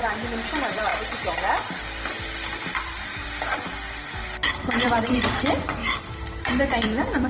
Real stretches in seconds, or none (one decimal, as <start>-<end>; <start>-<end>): 0.9-2.6; 5.8-6.4